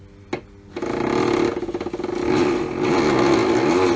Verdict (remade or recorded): recorded